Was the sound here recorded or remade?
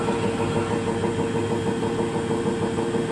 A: recorded